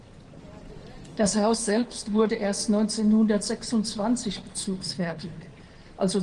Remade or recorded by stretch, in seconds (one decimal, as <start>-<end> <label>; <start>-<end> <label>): 0.0-1.1 recorded; 1.1-2.3 remade; 2.3-4.5 recorded; 4.5-5.3 remade; 5.3-6.2 recorded